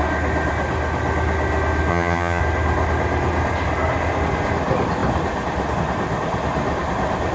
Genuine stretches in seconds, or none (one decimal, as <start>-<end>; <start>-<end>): 0.0-1.9; 2.4-7.3